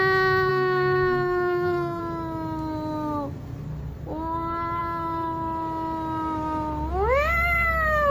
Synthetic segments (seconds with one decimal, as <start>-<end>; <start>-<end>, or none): 0.5-2.0